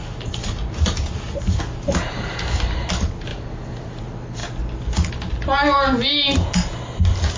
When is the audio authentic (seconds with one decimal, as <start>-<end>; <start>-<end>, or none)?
1.6-3.3; 4.0-7.4